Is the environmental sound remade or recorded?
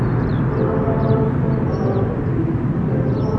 recorded